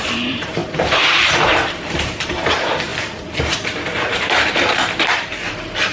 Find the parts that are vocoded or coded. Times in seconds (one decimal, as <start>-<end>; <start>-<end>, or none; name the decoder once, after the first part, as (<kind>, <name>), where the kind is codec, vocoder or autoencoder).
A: 0.0-2.9 (vocoder, BigVGAN v2); 3.5-5.9